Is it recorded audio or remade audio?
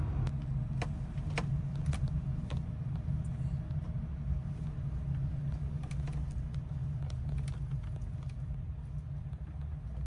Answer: recorded